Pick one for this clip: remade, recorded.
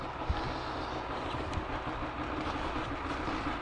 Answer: recorded